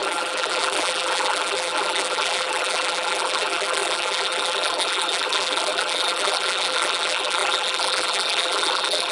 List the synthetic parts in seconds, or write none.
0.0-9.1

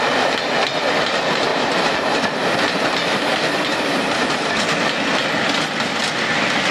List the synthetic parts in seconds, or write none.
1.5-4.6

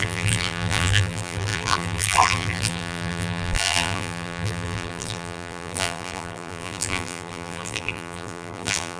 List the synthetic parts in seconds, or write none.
0.0-9.0

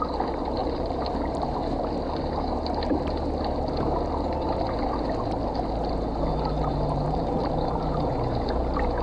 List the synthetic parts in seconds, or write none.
0.6-1.1; 6.7-7.5

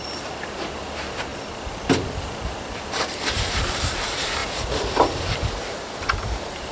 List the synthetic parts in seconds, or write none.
0.0-1.3; 3.3-4.4; 6.1-6.7